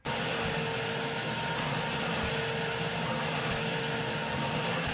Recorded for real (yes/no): yes